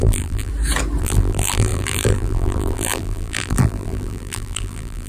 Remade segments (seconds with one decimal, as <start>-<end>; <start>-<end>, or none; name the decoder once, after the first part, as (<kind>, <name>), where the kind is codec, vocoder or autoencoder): 0.0-0.5 (vocoder, BigVGAN v2); 1.0-5.1